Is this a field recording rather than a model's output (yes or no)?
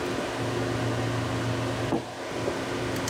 yes